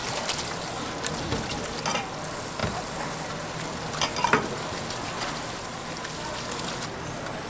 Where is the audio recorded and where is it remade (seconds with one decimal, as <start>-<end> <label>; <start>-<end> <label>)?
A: 0.0-7.5 recorded